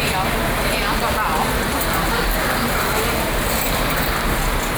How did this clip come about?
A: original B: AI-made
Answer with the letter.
A